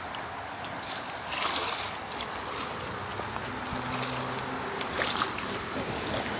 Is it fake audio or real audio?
real